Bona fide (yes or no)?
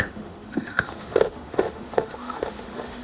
no